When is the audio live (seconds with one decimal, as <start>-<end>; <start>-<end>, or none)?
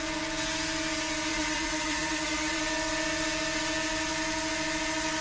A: 0.0-1.3; 2.6-5.2